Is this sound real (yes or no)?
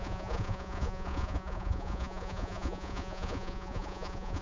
no